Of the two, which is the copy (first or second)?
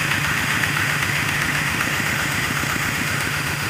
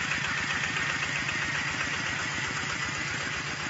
first